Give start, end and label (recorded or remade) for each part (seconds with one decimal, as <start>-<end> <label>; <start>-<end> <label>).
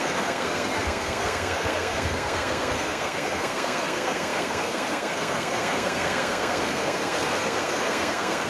0.0-8.5 remade